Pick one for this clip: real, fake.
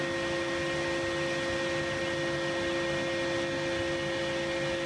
real